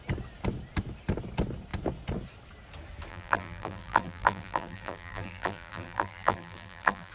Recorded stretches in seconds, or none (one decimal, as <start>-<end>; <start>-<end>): 0.0-3.1